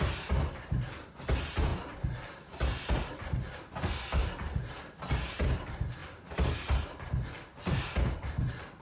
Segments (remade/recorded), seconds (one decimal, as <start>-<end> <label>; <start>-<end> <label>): 0.0-8.8 recorded